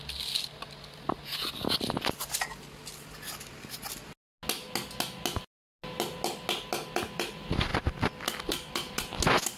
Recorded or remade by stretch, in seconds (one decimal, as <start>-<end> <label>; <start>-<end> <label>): 0.0-9.6 recorded